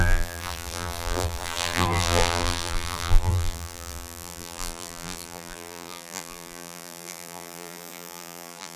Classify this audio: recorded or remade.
remade